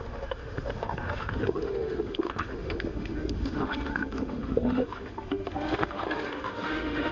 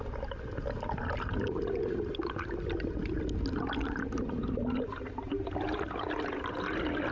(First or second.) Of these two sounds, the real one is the second